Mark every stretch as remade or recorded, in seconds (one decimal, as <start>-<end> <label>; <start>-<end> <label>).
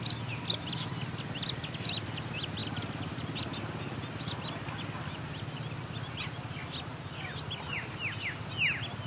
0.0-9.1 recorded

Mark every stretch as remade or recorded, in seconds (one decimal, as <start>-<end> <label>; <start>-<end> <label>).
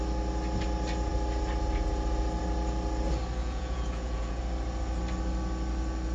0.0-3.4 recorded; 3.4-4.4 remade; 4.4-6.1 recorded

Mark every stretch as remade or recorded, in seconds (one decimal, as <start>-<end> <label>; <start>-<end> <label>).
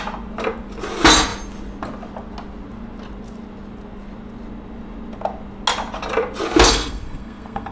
0.0-6.7 recorded; 6.7-7.7 remade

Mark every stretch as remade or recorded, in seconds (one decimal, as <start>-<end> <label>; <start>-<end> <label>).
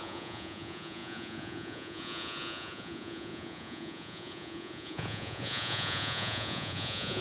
0.0-7.2 remade